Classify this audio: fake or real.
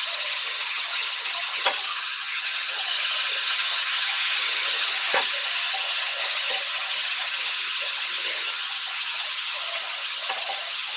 fake